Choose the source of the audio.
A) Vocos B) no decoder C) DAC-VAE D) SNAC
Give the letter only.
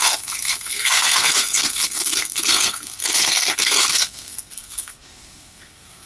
D